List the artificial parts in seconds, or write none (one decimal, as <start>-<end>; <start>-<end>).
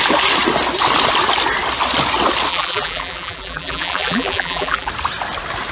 2.5-4.9